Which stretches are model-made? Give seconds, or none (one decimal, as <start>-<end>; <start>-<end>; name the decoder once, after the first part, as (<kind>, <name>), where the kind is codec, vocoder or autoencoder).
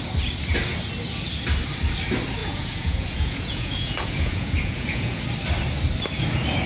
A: 2.4-5.2 (vocoder, Vocos)